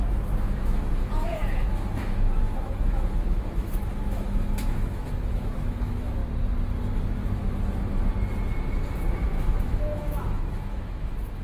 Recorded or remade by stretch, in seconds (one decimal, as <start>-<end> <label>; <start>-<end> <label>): 0.0-6.2 remade; 6.2-9.1 recorded; 9.1-11.4 remade